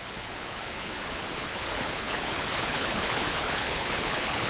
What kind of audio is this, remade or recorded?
remade